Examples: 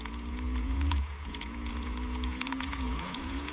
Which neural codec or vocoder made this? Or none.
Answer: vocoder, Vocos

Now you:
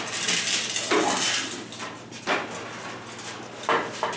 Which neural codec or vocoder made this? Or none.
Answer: none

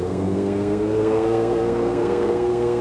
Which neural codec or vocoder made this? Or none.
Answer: codec, SNAC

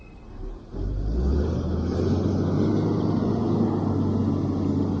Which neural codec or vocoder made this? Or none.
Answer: none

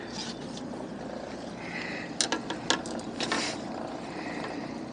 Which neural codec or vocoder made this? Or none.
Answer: none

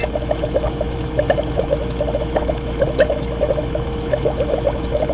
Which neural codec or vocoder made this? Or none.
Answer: autoencoder, DAC-VAE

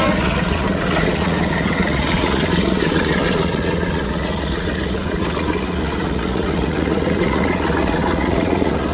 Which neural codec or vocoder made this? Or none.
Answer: vocoder, Vocos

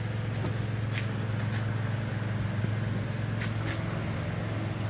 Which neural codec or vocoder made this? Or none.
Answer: none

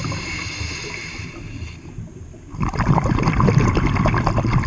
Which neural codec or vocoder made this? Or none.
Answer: none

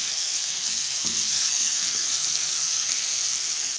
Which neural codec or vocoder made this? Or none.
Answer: codec, SNAC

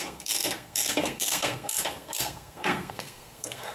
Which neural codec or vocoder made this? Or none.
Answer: codec, SNAC